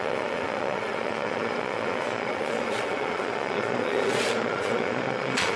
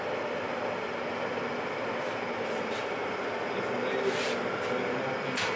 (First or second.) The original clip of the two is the second